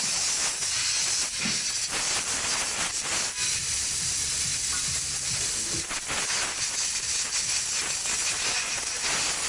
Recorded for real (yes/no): yes